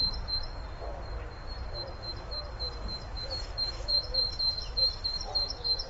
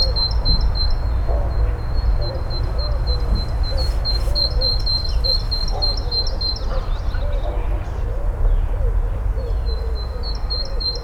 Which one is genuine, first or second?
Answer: second